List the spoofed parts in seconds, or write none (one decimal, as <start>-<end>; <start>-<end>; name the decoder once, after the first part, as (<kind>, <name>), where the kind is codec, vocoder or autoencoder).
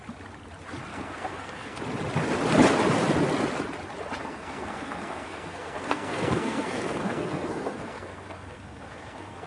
0.9-1.8 (codec, SNAC); 4.2-9.5